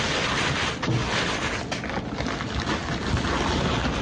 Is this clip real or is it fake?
real